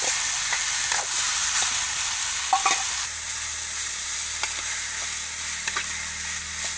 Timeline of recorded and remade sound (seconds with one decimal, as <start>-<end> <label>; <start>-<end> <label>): 0.0-6.8 recorded